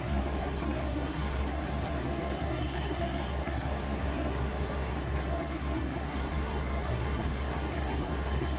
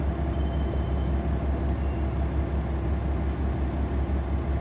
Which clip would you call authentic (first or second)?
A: second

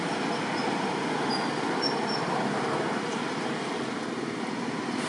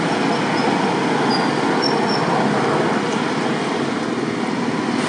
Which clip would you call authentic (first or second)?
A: second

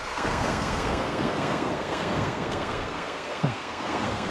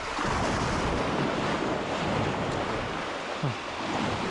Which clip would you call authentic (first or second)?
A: second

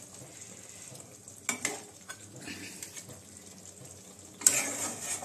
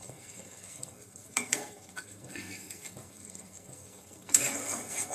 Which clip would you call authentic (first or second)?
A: first